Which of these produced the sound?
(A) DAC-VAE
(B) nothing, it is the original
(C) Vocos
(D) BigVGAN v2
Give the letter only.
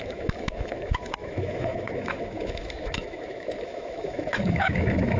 A